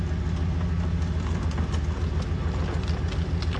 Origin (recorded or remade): recorded